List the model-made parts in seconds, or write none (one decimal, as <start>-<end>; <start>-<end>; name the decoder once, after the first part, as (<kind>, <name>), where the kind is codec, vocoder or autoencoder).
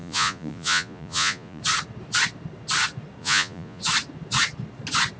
0.0-1.6 (vocoder, Vocos); 3.2-3.8